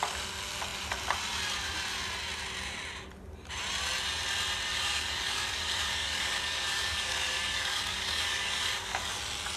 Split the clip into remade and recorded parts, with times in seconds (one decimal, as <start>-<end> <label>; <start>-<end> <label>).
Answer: 0.0-4.7 recorded; 4.7-9.2 remade; 9.2-9.6 recorded

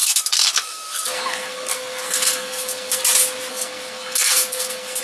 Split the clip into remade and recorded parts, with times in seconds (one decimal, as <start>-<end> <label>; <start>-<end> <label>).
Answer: 0.0-3.0 remade; 3.0-3.5 recorded; 3.5-5.0 remade

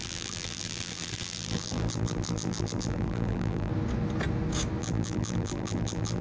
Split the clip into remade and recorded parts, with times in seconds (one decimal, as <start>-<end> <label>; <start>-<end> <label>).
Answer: 0.0-3.7 remade; 3.7-4.8 recorded; 4.8-6.2 remade

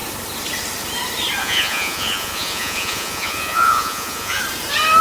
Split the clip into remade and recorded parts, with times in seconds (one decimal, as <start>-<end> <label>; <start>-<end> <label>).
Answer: 0.0-1.4 recorded; 1.4-4.4 remade; 4.4-5.0 recorded

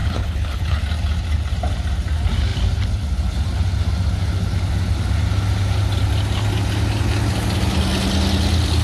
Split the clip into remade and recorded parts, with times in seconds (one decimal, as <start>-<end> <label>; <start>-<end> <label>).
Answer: 0.0-0.8 remade; 0.8-8.8 recorded

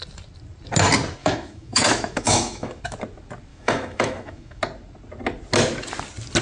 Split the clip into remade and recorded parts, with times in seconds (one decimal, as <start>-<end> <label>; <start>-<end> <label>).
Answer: 0.0-1.2 recorded; 1.2-2.8 remade; 2.8-3.5 recorded; 3.5-4.6 remade; 4.6-6.4 recorded

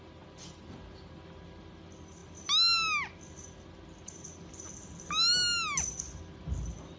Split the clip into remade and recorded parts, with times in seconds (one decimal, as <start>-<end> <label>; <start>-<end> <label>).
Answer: 0.0-7.0 recorded

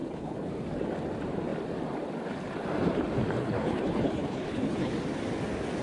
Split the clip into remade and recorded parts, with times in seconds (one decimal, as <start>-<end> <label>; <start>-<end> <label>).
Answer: 0.0-0.5 remade; 0.5-3.4 recorded; 3.4-4.9 remade; 4.9-5.8 recorded